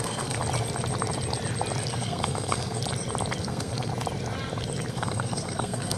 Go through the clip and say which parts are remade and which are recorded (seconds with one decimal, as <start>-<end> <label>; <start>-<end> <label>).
0.0-0.4 remade; 0.4-1.9 recorded; 1.9-2.8 remade; 2.8-3.4 recorded; 3.4-3.9 remade; 3.9-4.9 recorded; 4.9-6.0 remade